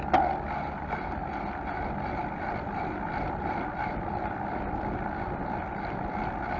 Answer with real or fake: real